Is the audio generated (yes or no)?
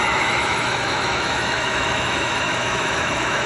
yes